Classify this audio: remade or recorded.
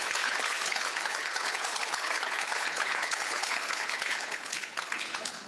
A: remade